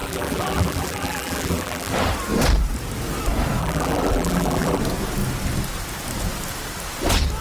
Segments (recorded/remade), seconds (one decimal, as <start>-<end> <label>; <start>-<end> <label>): 0.0-1.9 remade; 1.9-3.6 recorded; 3.6-4.8 remade; 4.8-7.4 recorded